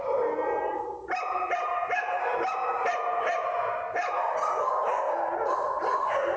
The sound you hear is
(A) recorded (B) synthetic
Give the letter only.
A